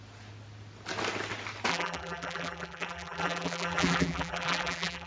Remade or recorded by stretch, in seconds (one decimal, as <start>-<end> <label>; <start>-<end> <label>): 0.0-1.7 recorded; 1.7-5.1 remade